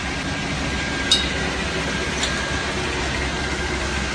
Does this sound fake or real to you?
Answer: real